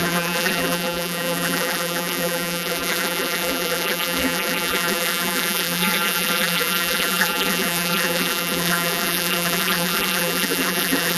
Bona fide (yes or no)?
no